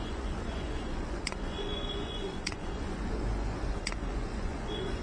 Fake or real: fake